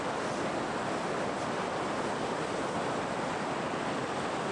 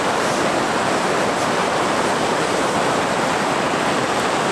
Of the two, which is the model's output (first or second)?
second